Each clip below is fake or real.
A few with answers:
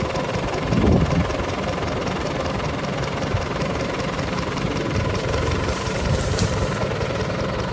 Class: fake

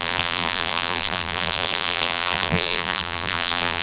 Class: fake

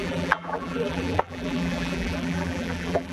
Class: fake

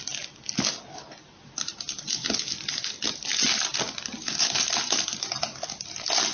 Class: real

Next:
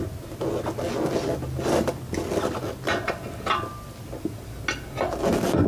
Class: real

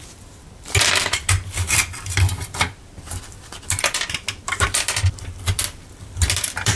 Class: fake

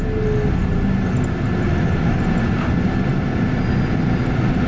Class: real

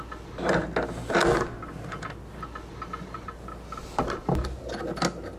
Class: real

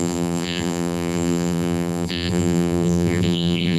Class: fake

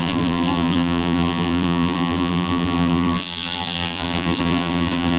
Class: fake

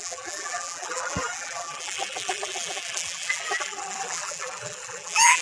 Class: fake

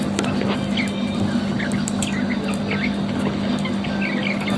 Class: real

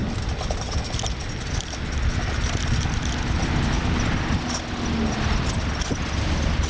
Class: real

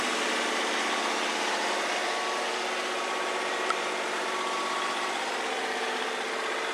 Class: real